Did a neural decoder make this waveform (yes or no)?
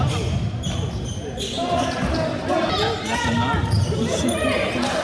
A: no